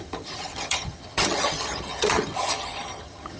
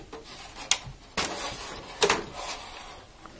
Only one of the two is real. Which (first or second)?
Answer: second